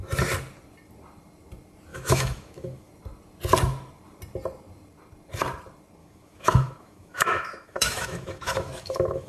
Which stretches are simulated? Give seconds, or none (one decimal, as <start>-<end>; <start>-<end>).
1.9-2.9; 6.0-9.3